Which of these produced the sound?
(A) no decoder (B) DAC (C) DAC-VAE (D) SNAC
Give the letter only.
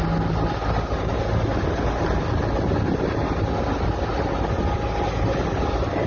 A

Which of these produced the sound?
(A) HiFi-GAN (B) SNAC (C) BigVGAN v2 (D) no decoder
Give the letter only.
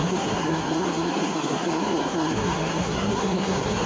B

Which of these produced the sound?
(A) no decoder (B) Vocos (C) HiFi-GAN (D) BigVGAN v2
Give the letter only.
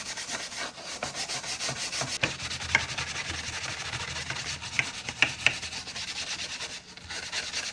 A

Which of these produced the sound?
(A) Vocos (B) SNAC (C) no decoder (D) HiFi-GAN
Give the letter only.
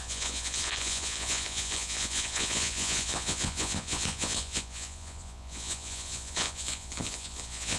A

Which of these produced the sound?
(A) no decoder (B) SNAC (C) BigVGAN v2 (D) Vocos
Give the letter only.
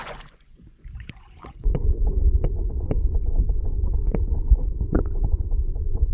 D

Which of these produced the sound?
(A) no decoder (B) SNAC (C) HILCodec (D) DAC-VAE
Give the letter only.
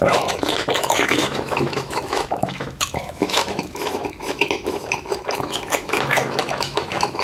D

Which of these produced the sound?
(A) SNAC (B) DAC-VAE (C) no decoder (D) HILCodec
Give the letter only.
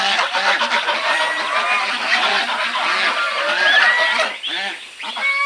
C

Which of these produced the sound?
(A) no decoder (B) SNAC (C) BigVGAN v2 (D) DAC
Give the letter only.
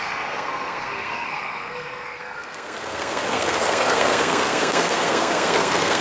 B